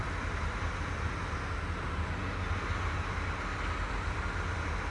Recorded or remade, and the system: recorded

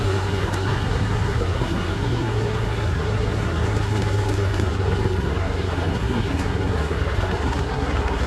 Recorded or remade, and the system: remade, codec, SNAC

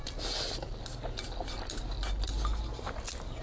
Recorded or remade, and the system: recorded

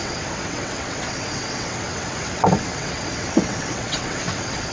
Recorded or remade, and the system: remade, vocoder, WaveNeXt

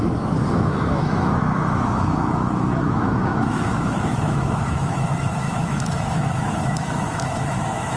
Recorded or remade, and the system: remade, autoencoder, DAC-VAE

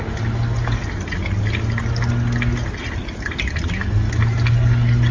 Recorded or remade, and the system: recorded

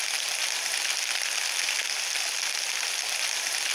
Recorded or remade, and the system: recorded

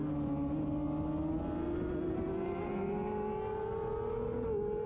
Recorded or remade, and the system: recorded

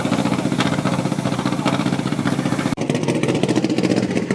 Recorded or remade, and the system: remade, vocoder, BigVGAN v2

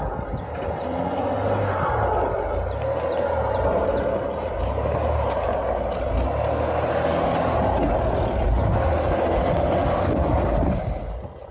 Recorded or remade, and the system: recorded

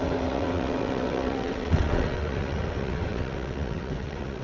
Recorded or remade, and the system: remade, vocoder, WaveNeXt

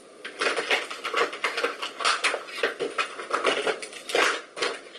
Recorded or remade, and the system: recorded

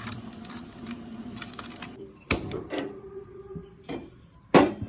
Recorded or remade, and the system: remade, vocoder, BigVGAN v2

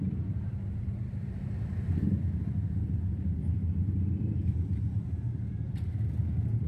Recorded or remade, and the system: remade, vocoder, BigVGAN v2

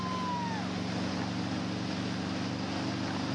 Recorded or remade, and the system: recorded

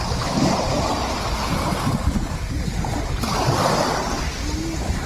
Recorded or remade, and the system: recorded